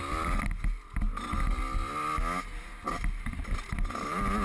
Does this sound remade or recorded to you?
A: recorded